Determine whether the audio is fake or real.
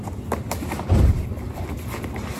real